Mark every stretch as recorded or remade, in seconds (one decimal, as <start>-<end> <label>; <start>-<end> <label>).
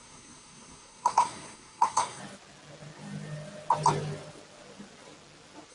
0.0-2.2 remade; 2.2-5.7 recorded